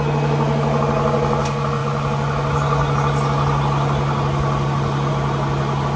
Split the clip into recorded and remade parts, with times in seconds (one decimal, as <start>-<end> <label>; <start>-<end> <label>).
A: 0.0-6.0 recorded